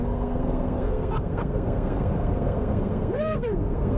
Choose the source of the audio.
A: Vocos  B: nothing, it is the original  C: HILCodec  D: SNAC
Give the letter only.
D